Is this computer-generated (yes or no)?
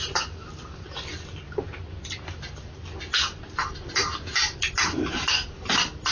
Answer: no